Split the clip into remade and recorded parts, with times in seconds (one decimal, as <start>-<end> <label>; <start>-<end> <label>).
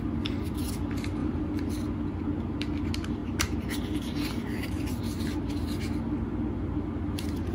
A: 0.0-1.2 recorded; 1.2-1.7 remade; 1.7-3.2 recorded; 3.2-5.0 remade; 5.0-7.5 recorded